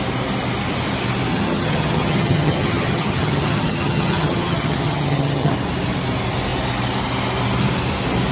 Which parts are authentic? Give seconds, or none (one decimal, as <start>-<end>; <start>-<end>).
0.0-1.3; 5.5-8.3